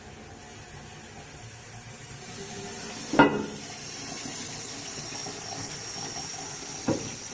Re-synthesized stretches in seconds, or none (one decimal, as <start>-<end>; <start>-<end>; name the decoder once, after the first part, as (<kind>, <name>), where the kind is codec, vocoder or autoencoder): none